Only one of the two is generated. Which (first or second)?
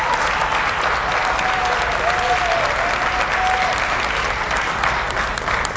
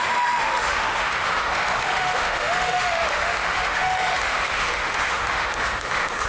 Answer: second